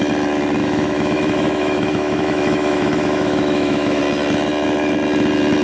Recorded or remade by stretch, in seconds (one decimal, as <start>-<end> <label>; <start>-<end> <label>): 0.0-0.6 recorded; 0.6-4.0 remade; 4.0-5.6 recorded